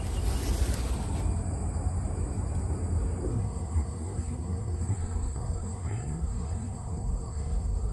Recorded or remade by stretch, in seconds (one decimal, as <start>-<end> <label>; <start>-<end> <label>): 0.0-3.3 recorded; 3.3-7.9 remade